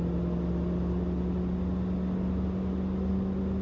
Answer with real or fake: real